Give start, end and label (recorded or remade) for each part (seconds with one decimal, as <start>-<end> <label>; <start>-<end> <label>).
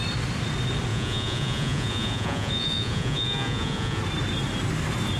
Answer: 0.0-0.9 recorded; 0.9-4.0 remade; 4.0-5.2 recorded